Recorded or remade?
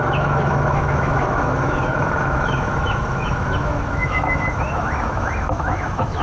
remade